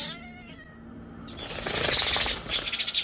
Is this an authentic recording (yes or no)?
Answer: yes